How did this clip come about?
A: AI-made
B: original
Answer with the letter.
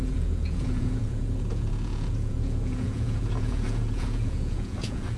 A